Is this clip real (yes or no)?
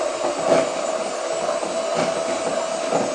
yes